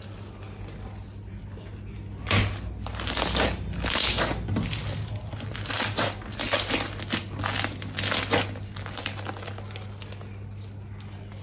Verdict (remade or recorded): recorded